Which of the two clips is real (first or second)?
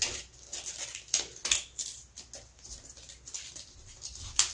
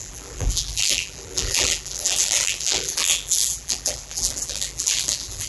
first